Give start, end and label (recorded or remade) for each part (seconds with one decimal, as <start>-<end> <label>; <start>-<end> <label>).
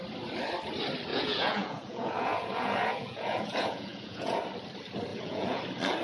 0.0-1.1 recorded; 1.1-4.4 remade; 4.4-5.1 recorded; 5.1-5.6 remade; 5.6-6.0 recorded